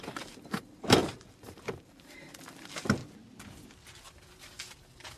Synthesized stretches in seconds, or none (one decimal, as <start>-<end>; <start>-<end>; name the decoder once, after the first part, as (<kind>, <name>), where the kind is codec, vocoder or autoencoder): 0.0-3.0 (vocoder, BigVGAN v2); 4.0-5.2